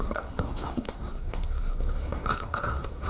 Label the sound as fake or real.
fake